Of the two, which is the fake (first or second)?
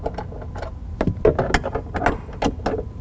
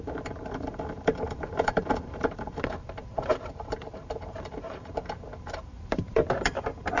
second